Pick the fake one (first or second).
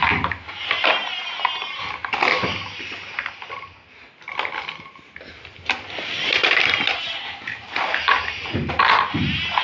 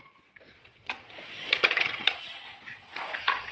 second